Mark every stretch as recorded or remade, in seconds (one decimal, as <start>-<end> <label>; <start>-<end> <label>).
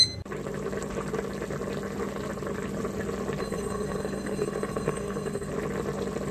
0.0-3.4 recorded; 3.4-5.5 remade; 5.5-6.3 recorded